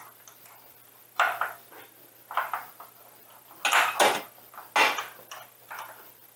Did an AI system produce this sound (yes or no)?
no